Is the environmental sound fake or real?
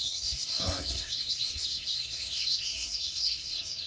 fake